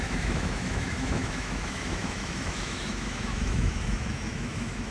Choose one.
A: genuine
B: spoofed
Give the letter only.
B